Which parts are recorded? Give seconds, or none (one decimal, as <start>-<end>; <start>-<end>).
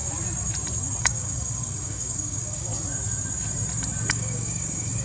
0.0-1.0; 2.7-4.1